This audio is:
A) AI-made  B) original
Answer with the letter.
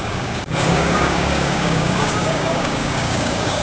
A